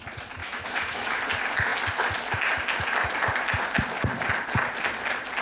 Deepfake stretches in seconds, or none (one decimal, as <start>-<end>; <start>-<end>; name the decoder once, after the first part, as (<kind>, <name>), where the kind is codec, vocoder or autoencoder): 0.4-1.2 (autoencoder, DAC-VAE)